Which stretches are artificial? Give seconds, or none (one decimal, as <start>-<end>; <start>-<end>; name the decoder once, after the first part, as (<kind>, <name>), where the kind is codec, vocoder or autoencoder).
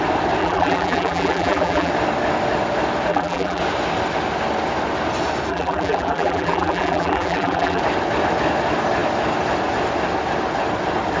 0.4-1.9 (vocoder, BigVGAN v2); 3.1-3.6; 5.5-7.8